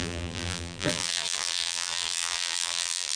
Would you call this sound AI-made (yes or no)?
yes